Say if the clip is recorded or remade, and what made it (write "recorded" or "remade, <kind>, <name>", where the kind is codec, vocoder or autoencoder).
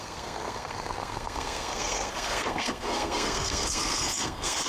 remade, codec, SNAC